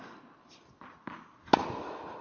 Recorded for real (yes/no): yes